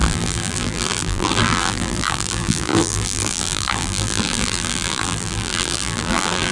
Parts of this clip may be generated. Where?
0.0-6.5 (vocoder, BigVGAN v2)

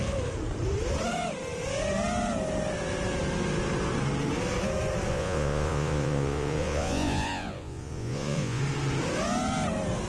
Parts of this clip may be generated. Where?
5.1-8.6 (vocoder, Vocos)

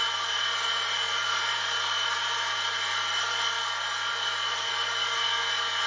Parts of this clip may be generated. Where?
0.0-5.3 (vocoder, BigVGAN v2)

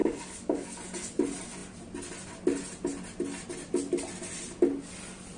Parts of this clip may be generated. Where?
0.0-0.8 (codec, DAC)